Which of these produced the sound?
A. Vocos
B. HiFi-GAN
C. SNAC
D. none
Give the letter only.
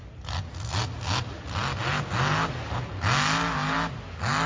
D